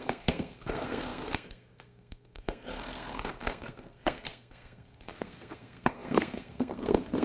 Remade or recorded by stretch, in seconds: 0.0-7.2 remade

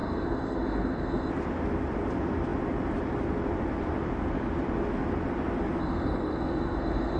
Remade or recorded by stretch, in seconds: 0.0-1.3 remade; 1.3-5.8 recorded; 5.8-7.2 remade

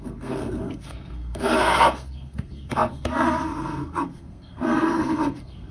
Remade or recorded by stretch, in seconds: 0.0-5.7 remade

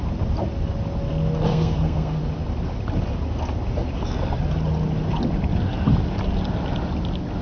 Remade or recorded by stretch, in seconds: 0.0-1.5 recorded; 1.5-2.2 remade; 2.2-7.4 recorded

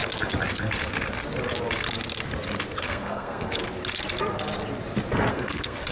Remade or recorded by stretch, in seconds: 0.0-2.8 recorded; 2.8-3.6 remade; 3.6-5.3 recorded; 5.3-5.9 remade

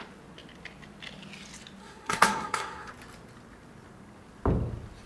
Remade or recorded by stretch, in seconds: 0.0-1.8 recorded; 1.8-2.9 remade; 2.9-5.1 recorded